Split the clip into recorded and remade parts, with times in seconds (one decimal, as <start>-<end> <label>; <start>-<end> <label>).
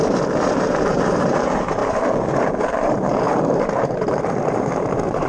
0.0-1.8 remade; 1.8-2.6 recorded; 2.6-5.3 remade